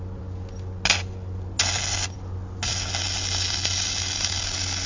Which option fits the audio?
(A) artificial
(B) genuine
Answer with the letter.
B